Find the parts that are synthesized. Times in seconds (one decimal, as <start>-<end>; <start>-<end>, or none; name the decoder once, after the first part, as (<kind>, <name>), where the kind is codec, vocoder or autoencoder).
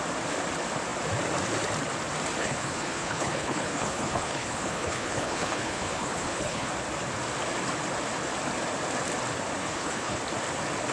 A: 2.4-6.7 (codec, HILCodec); 9.6-10.2